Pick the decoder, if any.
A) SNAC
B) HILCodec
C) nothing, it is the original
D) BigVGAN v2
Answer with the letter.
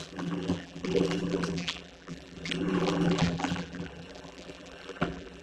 D